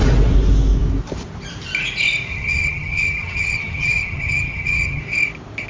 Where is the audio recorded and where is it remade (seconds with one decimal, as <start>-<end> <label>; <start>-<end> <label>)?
0.0-2.3 recorded; 2.3-5.0 remade; 5.0-5.7 recorded